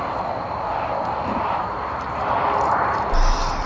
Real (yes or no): yes